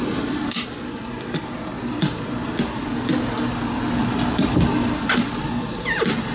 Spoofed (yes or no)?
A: no